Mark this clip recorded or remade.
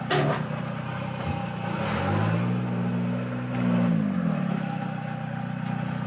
recorded